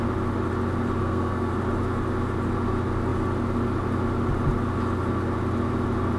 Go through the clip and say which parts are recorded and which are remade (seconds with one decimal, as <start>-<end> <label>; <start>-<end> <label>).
0.0-1.0 recorded; 1.0-1.5 remade; 1.5-6.2 recorded